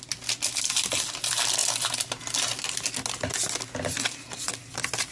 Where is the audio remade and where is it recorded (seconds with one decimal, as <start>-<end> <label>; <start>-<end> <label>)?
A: 0.0-5.1 recorded